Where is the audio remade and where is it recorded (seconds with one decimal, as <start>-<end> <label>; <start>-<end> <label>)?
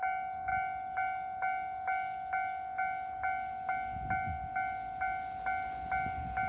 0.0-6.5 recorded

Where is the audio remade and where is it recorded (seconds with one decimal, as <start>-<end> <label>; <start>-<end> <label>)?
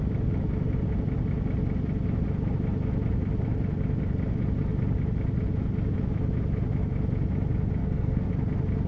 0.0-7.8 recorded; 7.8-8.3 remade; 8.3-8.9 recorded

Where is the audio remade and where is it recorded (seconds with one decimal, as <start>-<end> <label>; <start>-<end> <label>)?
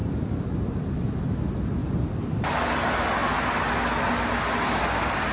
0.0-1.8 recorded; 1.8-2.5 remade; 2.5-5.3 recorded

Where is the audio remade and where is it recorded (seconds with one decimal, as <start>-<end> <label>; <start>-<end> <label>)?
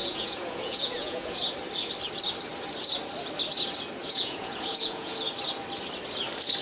0.0-1.4 remade; 1.4-4.0 recorded; 4.0-5.2 remade; 5.2-6.6 recorded